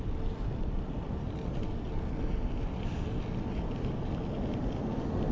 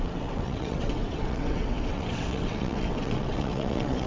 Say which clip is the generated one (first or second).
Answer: second